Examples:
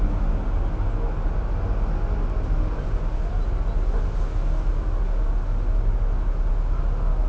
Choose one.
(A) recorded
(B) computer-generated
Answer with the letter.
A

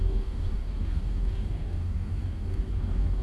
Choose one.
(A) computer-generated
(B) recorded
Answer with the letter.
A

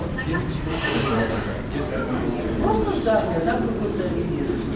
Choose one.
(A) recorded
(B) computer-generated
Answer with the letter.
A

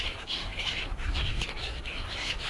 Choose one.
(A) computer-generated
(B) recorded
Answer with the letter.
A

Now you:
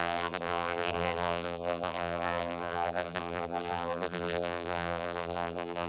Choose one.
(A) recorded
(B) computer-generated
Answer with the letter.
B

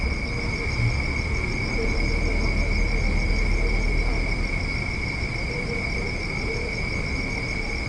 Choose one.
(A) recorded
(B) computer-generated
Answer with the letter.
A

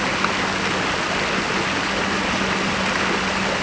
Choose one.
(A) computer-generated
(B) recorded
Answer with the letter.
B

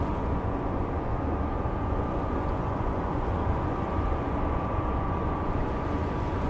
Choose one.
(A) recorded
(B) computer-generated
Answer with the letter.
B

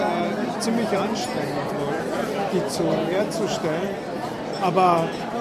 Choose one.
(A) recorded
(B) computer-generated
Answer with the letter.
A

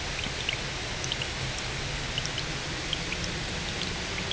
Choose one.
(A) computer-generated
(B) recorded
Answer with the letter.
B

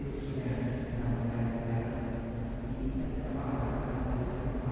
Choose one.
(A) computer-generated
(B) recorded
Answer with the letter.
B